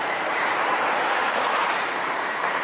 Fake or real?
fake